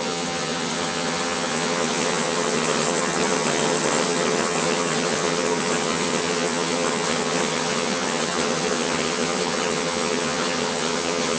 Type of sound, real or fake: fake